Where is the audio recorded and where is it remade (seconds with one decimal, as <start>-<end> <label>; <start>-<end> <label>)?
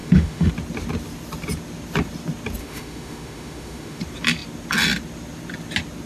0.0-0.5 remade; 0.5-2.6 recorded; 2.6-4.0 remade; 4.0-6.1 recorded